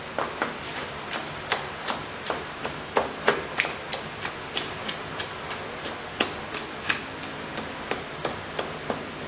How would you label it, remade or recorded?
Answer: recorded